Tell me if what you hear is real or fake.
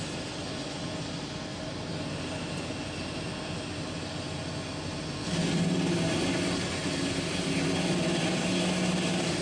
real